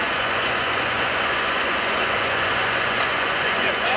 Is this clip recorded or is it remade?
remade